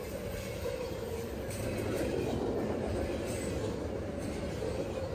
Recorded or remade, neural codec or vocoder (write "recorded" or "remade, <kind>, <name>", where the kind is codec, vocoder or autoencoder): recorded